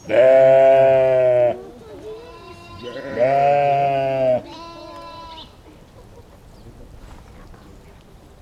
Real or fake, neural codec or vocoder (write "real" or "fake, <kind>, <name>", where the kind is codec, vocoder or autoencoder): real